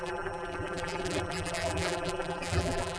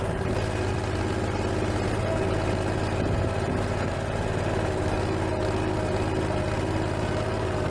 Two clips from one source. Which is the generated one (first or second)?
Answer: first